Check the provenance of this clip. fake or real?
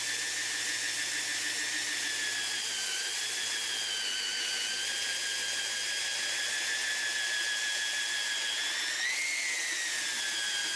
real